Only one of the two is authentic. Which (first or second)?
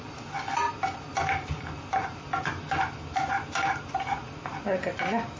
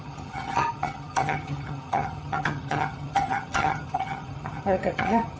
first